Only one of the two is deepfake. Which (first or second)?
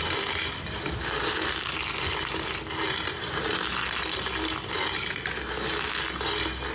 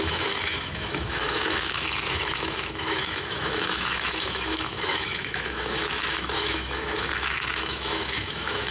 second